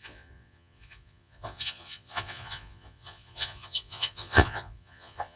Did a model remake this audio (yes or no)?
yes